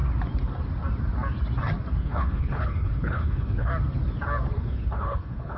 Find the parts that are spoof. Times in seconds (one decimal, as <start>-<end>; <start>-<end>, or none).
2.0-3.7; 4.5-5.6